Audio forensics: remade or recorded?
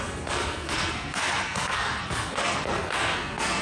remade